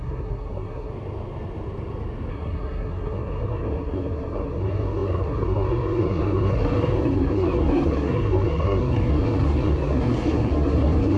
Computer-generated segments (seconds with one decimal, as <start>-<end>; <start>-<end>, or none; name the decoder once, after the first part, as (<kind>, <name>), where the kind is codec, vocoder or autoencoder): 0.0-0.9 (codec, SNAC); 2.3-11.2